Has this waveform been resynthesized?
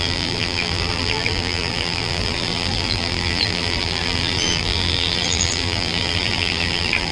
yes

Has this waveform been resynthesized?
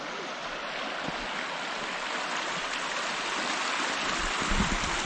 no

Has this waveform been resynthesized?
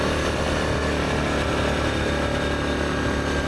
no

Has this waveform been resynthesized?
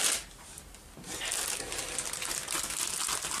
no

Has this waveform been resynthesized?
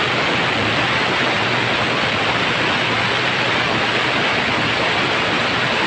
no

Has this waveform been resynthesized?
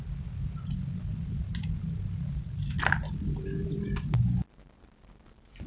no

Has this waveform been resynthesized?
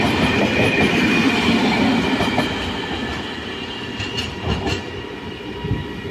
no